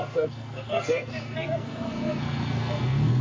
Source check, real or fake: fake